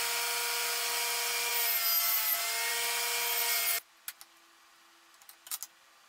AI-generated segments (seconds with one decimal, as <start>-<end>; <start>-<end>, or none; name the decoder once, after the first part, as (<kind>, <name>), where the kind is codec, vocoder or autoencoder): none